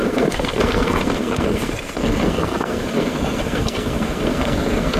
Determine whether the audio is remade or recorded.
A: remade